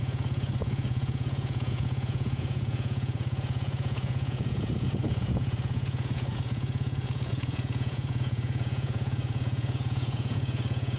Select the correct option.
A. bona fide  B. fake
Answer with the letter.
B